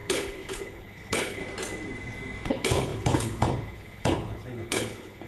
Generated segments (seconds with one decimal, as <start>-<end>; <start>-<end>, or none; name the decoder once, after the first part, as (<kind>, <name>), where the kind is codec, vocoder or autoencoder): 0.0-1.4 (codec, HILCodec); 2.5-5.3